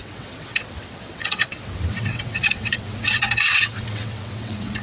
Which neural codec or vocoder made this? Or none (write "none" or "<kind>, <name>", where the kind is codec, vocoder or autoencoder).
vocoder, WaveNeXt